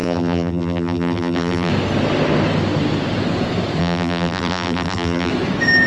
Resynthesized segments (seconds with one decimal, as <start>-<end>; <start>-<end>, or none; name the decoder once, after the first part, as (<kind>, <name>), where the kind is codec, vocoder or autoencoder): 0.0-1.7 (vocoder, BigVGAN v2); 3.8-5.3